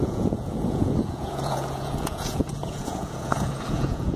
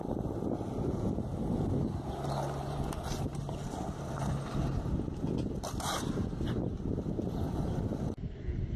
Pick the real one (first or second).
second